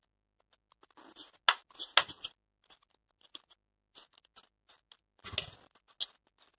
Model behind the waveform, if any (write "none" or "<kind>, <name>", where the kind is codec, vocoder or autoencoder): none